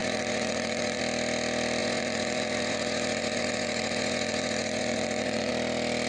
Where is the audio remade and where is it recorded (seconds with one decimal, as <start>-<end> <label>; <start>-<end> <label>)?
0.0-1.0 remade; 1.0-1.8 recorded; 1.8-5.5 remade; 5.5-6.1 recorded